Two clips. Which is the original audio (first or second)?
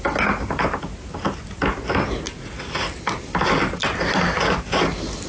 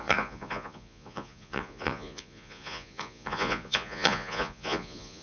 first